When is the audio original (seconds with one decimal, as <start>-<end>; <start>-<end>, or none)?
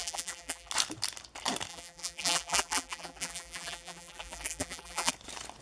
0.7-1.7; 5.1-5.6